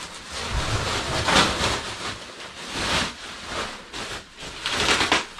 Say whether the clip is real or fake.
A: real